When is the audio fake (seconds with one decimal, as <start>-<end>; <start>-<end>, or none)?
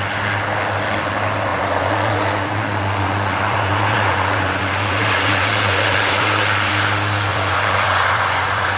1.5-6.7; 7.3-8.8